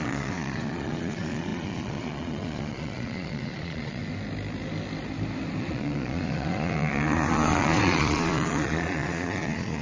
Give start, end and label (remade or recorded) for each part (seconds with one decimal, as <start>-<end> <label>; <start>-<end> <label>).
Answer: 0.0-4.0 remade; 4.0-5.6 recorded; 5.6-9.8 remade